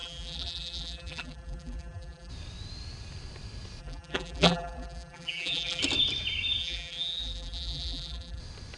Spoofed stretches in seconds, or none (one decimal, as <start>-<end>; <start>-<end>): 0.0-2.3; 3.8-5.8; 6.6-8.4